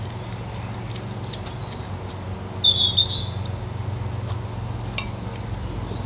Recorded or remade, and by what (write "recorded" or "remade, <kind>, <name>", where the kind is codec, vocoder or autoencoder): recorded